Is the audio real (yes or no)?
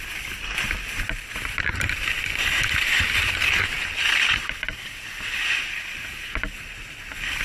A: yes